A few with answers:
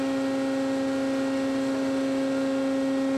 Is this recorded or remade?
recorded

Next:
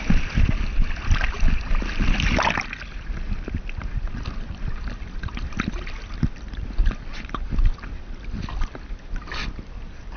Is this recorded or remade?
recorded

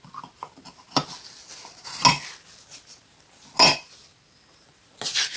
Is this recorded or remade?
recorded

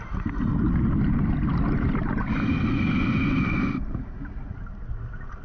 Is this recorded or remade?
recorded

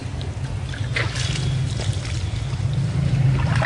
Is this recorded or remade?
recorded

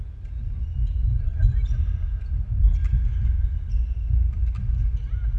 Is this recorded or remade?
recorded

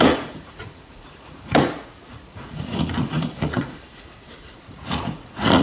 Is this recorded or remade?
remade